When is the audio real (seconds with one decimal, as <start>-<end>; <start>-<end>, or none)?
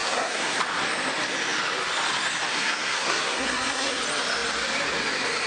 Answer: 0.6-2.5; 4.0-5.5